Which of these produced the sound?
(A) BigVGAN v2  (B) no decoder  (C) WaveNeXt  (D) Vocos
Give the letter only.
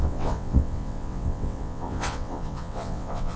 C